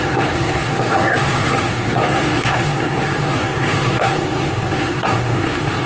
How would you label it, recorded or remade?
remade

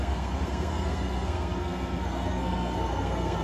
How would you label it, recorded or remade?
remade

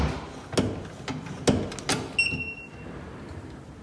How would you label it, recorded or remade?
recorded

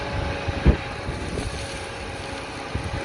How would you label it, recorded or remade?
recorded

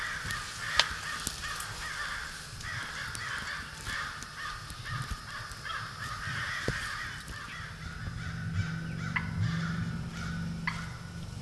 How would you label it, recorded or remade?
recorded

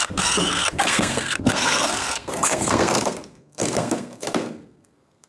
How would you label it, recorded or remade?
remade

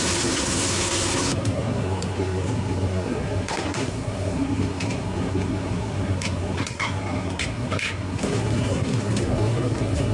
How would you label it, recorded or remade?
remade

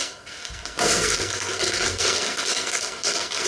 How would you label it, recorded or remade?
remade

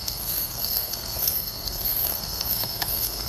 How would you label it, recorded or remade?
remade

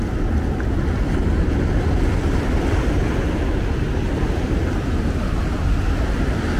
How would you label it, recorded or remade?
recorded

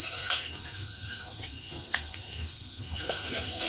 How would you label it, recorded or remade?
remade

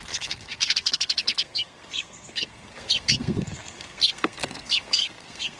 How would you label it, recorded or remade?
remade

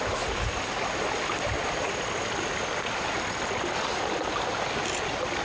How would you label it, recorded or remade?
recorded